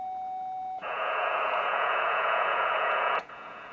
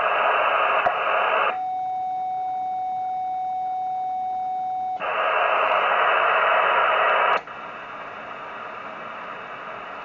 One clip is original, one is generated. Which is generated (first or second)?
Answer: first